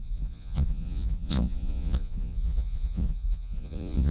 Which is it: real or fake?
fake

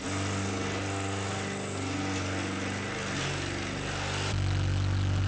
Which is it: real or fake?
real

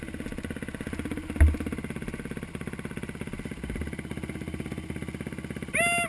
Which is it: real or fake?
real